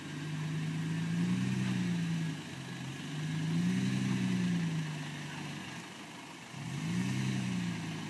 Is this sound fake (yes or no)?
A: no